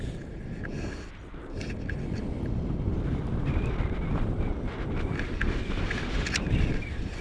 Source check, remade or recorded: recorded